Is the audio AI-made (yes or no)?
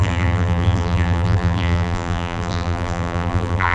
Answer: yes